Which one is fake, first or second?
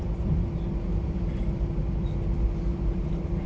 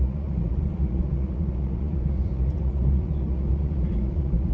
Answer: second